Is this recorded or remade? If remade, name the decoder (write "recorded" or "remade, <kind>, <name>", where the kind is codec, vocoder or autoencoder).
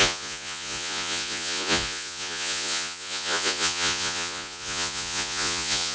remade, vocoder, Vocos